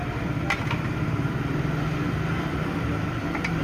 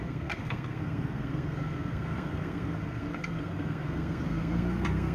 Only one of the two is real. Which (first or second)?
first